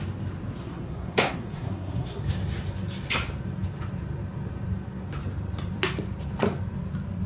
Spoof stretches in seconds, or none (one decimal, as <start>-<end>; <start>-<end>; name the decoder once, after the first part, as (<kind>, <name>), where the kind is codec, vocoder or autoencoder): 0.6-2.2 (codec, SNAC)